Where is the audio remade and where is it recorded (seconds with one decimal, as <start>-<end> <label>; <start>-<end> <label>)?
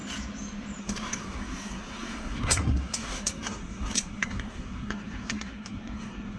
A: 0.0-0.8 recorded; 0.8-6.4 remade